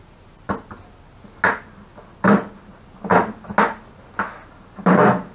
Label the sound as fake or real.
real